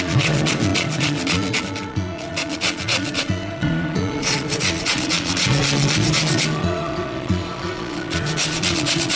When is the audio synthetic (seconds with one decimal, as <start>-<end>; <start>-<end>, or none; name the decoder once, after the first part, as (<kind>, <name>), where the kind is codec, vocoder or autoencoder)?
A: 0.0-9.2 (vocoder, Vocos)